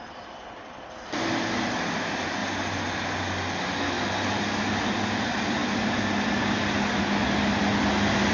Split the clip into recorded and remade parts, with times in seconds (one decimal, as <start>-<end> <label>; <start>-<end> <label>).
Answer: 0.0-8.3 recorded